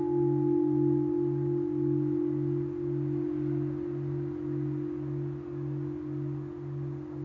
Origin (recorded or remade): recorded